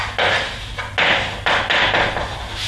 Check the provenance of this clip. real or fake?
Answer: real